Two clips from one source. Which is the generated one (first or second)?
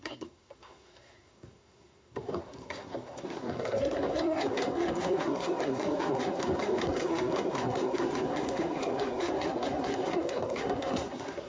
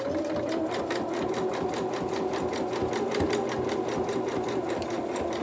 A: first